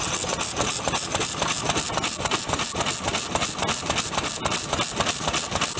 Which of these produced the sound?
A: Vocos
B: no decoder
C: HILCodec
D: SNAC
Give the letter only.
B